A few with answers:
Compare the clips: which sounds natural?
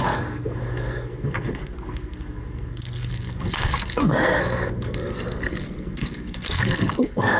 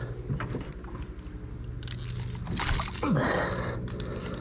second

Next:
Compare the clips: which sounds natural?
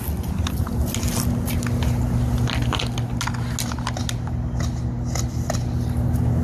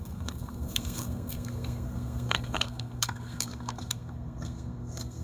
first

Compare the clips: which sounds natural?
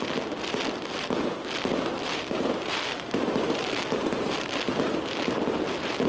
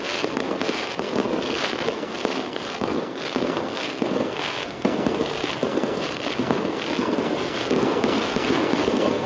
first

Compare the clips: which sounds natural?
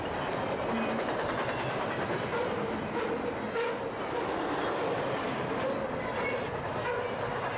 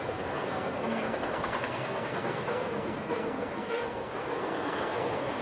first